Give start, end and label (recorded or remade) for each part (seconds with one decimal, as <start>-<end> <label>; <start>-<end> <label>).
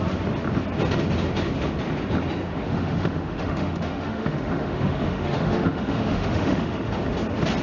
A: 0.0-2.5 recorded; 2.5-6.9 remade; 6.9-7.6 recorded